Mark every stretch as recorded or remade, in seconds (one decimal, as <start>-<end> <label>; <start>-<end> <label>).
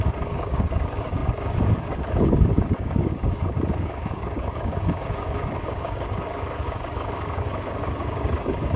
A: 0.0-8.8 remade